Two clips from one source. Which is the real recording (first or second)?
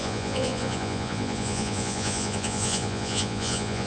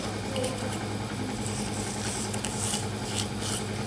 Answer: second